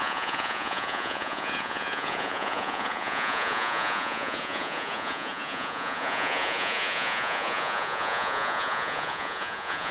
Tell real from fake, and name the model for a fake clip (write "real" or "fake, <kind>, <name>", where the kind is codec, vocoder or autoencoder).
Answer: fake, vocoder, Vocos